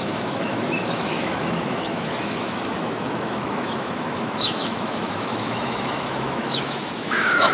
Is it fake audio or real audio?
fake